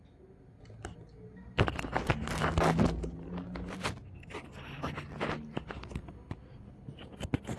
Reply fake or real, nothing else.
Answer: real